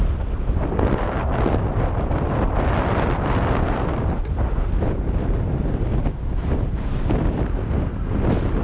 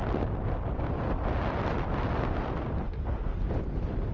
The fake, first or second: first